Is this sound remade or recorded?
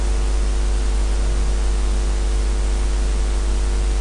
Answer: recorded